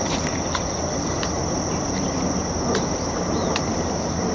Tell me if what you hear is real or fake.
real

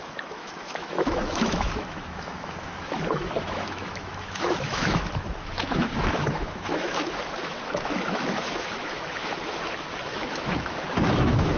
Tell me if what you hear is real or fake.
fake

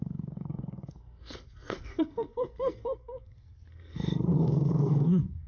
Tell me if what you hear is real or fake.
fake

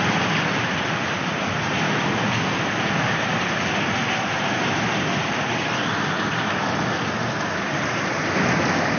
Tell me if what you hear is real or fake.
real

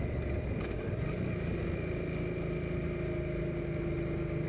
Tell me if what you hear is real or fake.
real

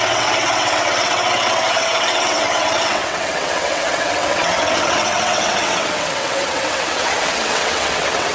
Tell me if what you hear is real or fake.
fake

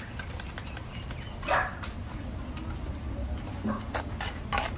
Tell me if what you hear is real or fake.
real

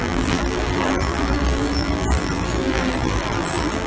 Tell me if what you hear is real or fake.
fake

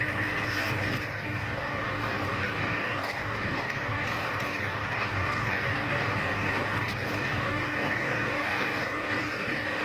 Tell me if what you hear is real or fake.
fake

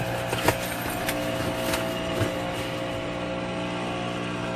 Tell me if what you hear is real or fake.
real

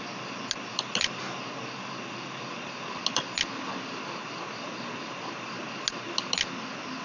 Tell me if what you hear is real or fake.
real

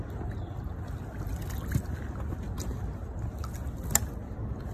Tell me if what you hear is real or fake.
real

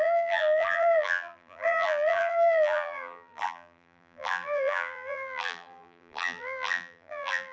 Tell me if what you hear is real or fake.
fake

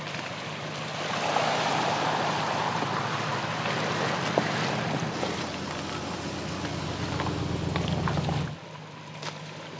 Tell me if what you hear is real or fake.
real